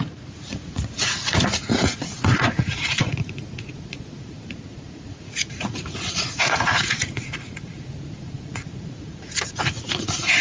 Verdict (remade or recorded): remade